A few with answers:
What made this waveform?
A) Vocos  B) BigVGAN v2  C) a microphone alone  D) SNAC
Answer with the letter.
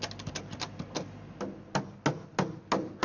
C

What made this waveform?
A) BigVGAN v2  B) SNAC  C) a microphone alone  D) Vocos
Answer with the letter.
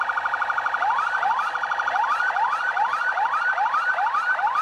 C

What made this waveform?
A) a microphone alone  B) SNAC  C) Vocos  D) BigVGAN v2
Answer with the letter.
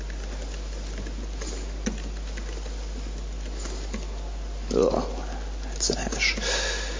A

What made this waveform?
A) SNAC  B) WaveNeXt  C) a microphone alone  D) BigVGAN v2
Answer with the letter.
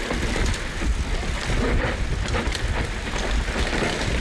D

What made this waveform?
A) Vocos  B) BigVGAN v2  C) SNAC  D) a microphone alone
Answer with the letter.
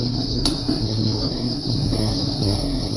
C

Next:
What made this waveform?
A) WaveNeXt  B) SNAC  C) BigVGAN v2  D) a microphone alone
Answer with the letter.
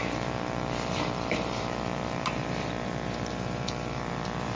C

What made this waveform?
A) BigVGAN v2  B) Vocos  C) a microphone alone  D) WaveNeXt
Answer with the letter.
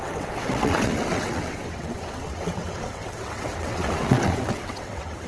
D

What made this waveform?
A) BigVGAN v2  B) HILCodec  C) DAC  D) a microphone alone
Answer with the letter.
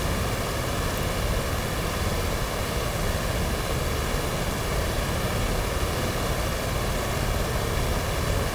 D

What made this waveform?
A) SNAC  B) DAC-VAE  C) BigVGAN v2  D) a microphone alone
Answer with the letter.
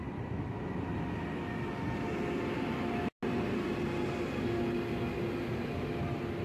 D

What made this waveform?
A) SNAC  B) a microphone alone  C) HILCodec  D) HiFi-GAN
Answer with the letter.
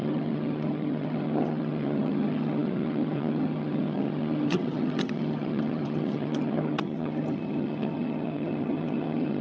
D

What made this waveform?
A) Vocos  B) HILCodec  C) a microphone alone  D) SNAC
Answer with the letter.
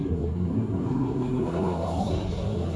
D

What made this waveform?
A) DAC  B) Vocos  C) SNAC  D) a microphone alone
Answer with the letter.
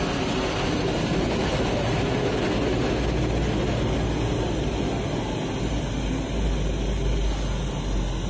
D